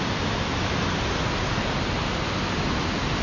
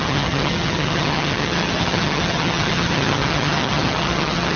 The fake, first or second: second